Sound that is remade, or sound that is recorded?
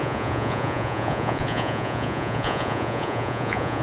remade